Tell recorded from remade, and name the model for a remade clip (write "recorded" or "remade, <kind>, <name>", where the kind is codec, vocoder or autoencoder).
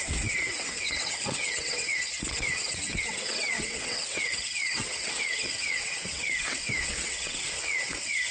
remade, vocoder, WaveNeXt